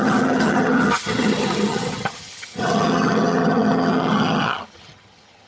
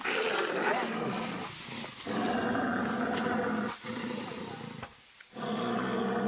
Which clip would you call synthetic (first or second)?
first